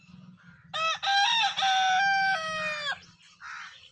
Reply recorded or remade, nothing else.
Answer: recorded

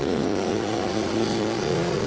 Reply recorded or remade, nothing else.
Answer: remade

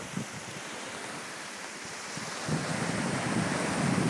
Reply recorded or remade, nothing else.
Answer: recorded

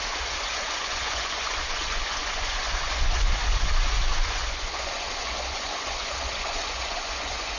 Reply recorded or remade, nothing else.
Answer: remade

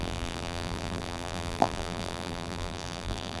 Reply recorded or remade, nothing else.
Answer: remade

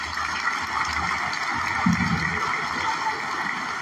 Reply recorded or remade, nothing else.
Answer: recorded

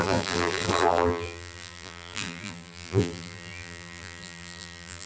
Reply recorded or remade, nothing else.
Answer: remade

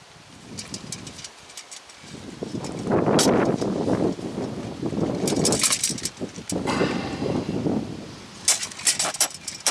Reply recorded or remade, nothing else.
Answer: recorded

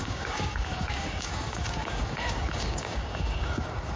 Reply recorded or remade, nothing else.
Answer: remade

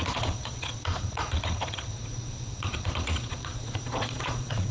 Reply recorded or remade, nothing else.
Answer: remade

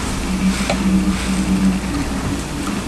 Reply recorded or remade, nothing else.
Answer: recorded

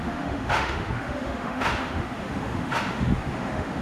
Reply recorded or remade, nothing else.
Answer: remade